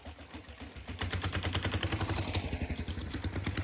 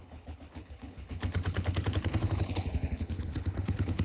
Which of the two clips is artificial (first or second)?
second